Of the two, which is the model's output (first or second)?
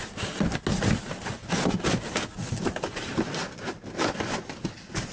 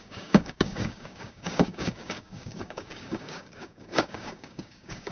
second